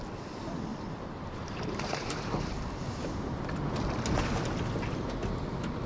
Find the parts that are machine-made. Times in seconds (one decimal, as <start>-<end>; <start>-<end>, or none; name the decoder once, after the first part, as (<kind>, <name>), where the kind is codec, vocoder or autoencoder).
0.7-3.8 (vocoder, BigVGAN v2)